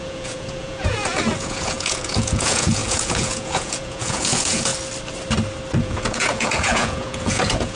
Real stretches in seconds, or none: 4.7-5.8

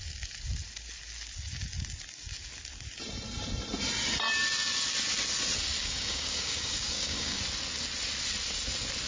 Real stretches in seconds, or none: 0.0-5.8; 7.4-9.1

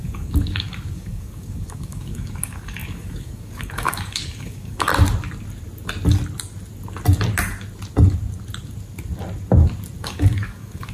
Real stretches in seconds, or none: 4.9-10.0

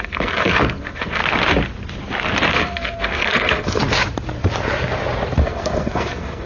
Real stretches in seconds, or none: 1.2-2.5; 3.8-5.4

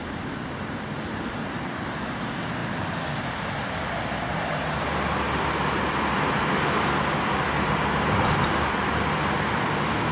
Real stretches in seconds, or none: 0.0-10.1

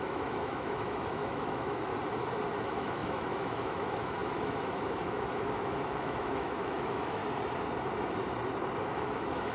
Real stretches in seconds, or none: 1.9-2.6; 7.2-8.8

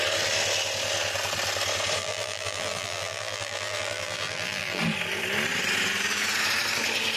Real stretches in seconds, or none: 0.0-2.0; 4.8-7.2

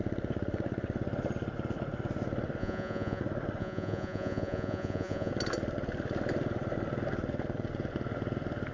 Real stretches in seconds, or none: 0.0-2.6; 3.2-3.6; 5.3-8.7